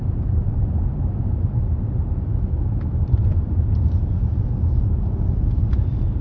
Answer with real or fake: fake